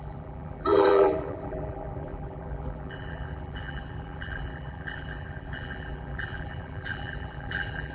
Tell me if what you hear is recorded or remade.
remade